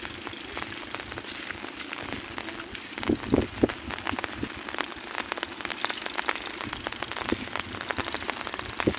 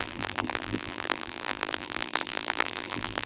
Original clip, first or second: first